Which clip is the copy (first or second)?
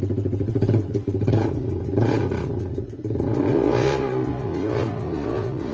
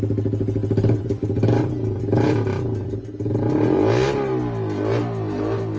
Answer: first